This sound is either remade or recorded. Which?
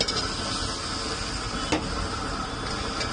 recorded